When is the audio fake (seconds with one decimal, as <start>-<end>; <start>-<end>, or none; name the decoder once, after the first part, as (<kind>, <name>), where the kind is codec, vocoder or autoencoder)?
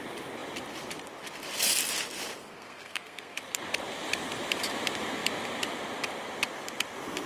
2.4-3.4 (codec, SNAC)